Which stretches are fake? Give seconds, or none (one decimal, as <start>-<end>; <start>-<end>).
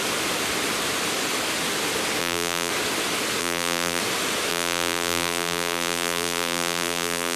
2.2-2.7; 3.4-4.0; 4.5-7.4